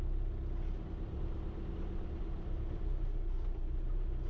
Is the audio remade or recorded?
recorded